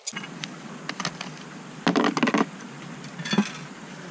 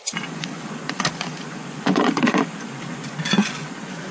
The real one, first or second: first